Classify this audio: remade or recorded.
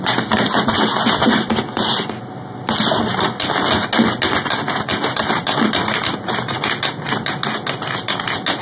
recorded